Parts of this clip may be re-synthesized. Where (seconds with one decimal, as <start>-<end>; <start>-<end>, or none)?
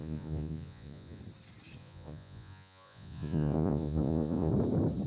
0.0-1.2; 1.8-4.5